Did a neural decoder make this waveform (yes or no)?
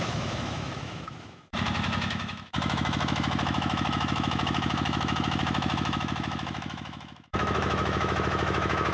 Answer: yes